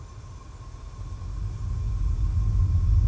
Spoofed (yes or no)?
no